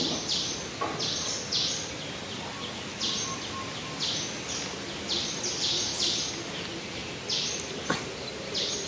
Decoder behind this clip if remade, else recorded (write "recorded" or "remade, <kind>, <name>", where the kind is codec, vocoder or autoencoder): recorded